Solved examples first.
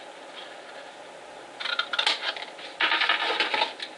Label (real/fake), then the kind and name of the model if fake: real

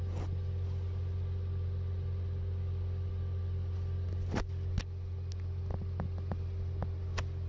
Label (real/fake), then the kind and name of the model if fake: real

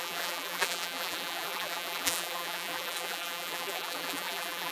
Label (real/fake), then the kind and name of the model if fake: fake, vocoder, BigVGAN v2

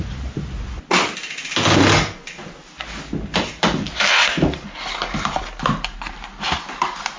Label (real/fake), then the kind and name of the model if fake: real